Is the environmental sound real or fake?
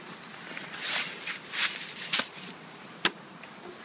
real